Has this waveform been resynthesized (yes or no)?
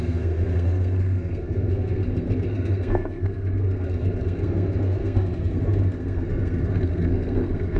yes